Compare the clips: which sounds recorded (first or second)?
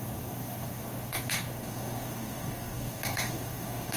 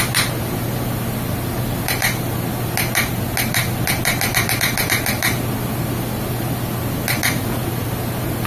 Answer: second